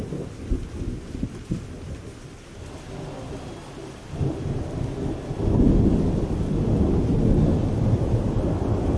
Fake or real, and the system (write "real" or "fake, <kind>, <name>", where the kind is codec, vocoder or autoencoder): real